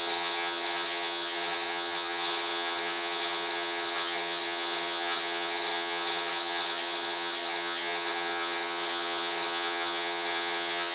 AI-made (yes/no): yes